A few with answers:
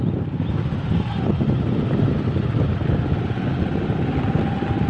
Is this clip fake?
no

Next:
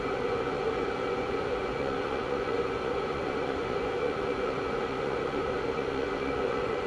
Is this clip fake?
yes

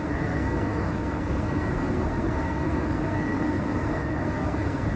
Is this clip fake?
yes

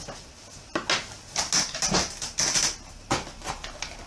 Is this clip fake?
no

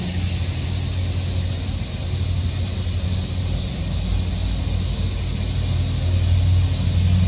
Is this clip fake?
no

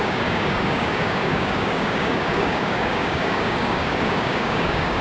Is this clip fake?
yes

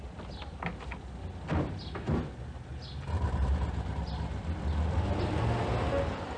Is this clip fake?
no